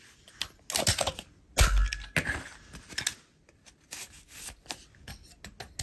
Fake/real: real